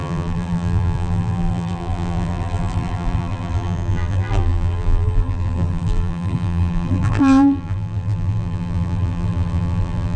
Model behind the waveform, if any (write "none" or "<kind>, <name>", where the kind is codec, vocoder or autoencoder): vocoder, BigVGAN v2